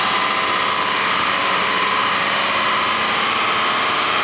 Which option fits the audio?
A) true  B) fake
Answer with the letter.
A